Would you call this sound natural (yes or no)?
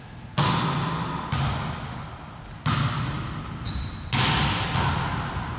yes